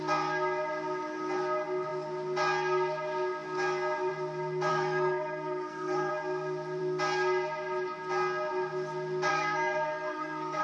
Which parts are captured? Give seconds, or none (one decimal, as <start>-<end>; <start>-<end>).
0.0-4.7; 6.1-9.3